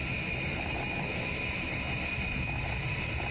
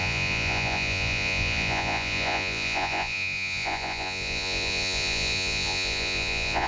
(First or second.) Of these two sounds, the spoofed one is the second